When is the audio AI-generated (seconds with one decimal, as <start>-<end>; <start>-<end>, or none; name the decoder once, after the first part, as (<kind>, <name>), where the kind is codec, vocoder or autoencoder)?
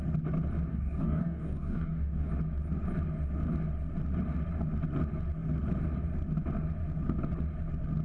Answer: 0.7-2.3 (codec, DAC)